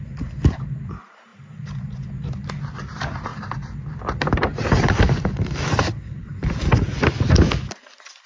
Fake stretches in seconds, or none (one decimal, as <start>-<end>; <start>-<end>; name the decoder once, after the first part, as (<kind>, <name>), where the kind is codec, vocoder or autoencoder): 3.3-7.2 (vocoder, BigVGAN v2)